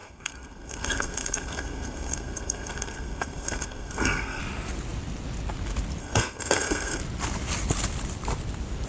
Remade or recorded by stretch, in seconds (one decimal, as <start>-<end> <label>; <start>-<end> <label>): 0.0-4.4 remade; 4.4-6.0 recorded; 6.0-7.0 remade; 7.0-8.9 recorded